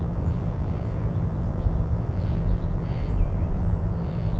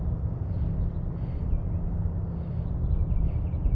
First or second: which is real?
second